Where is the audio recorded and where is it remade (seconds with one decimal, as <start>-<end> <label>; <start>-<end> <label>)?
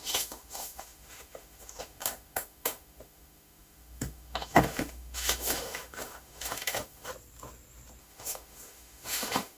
0.0-7.1 remade; 7.1-8.0 recorded; 8.0-9.6 remade